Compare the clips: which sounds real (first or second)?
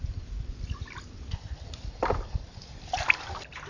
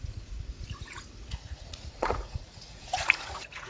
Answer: first